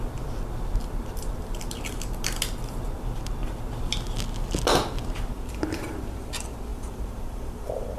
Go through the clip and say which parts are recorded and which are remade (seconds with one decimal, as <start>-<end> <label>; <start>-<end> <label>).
0.0-6.7 recorded; 6.7-8.0 remade